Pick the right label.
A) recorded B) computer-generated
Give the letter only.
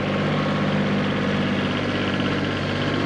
A